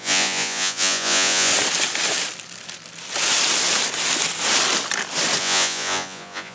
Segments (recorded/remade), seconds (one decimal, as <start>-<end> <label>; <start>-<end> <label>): 0.0-1.5 remade; 1.5-5.4 recorded; 5.4-6.5 remade